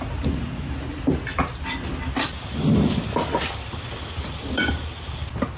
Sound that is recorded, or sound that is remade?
recorded